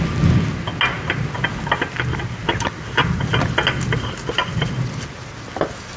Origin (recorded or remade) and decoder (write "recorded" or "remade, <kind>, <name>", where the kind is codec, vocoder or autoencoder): recorded